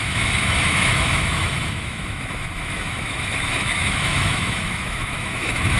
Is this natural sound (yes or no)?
no